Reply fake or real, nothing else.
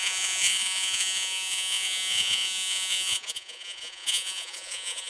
fake